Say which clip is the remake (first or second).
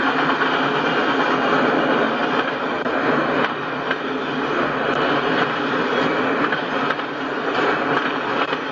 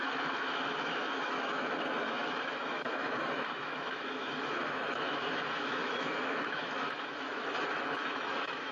second